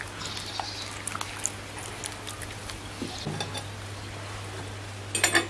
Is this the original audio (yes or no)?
yes